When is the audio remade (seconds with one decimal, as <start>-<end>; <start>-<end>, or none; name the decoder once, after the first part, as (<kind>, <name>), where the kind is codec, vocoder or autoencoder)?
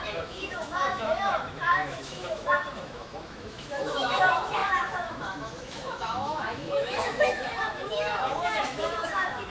0.0-9.5 (autoencoder, DAC-VAE)